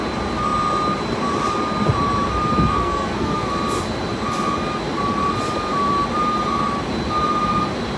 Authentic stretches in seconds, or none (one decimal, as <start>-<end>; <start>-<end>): 0.0-2.8; 3.5-8.0